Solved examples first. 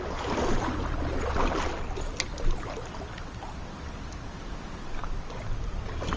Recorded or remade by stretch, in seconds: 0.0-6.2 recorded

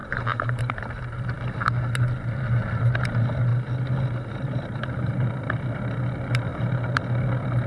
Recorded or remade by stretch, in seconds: 0.0-0.6 remade; 0.6-6.5 recorded; 6.5-7.0 remade; 7.0-7.7 recorded

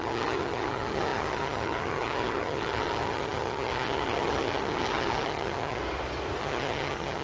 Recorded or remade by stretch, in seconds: 0.0-5.8 remade; 5.8-6.4 recorded; 6.4-7.2 remade